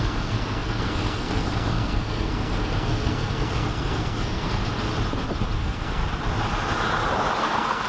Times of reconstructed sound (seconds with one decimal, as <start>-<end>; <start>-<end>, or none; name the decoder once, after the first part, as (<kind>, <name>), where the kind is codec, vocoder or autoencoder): 0.0-4.7 (codec, SNAC); 5.6-6.0; 7.4-7.9